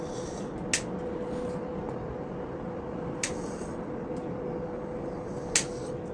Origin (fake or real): real